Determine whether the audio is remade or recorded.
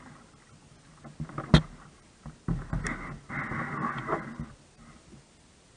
recorded